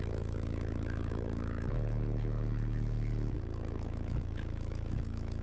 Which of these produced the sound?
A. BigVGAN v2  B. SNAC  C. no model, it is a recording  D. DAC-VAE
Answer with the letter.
D